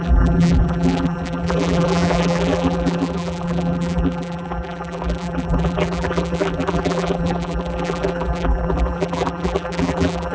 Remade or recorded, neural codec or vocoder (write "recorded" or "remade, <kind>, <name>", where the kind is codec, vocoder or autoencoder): remade, vocoder, BigVGAN v2